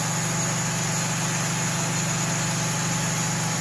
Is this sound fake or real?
real